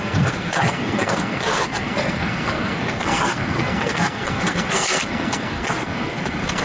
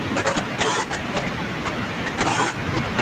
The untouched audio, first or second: second